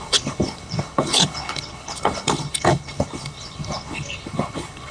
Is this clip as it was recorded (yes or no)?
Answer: no